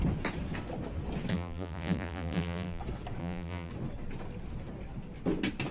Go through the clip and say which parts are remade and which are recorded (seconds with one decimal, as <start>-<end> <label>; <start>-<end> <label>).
0.0-1.3 recorded; 1.3-2.8 remade; 2.8-3.2 recorded; 3.2-3.7 remade; 3.7-5.7 recorded